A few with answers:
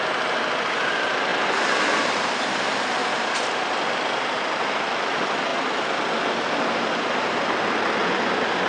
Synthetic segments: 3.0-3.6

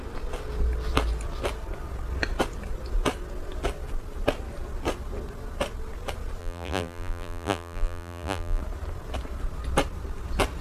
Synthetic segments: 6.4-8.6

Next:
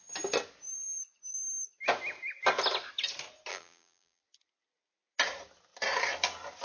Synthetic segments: 3.5-4.2

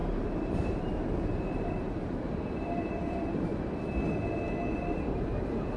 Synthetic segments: 0.0-3.5; 4.8-5.8

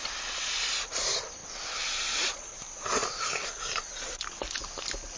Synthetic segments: 1.4-4.5